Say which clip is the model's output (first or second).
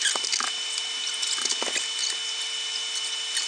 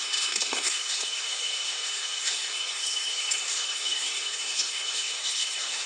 second